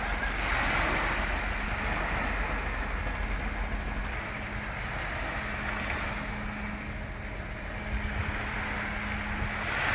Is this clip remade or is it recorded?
recorded